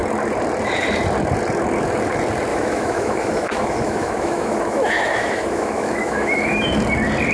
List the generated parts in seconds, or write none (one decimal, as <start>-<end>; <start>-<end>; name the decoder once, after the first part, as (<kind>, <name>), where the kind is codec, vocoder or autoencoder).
2.5-6.7 (autoencoder, DAC-VAE)